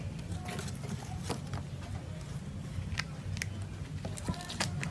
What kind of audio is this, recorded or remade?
recorded